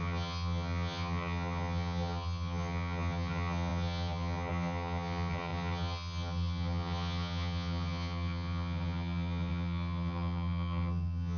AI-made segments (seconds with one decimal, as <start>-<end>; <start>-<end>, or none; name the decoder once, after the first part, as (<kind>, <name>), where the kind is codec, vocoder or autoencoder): 0.0-11.4 (vocoder, HiFi-GAN)